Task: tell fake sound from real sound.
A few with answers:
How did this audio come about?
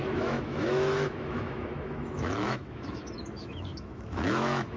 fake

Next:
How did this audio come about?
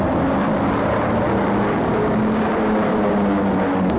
fake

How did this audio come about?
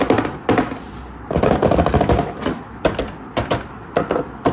real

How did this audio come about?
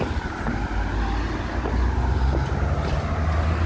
real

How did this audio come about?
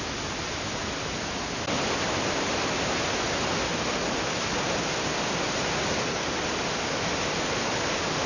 real